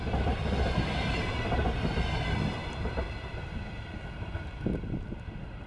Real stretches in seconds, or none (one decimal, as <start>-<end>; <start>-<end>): 0.0-5.7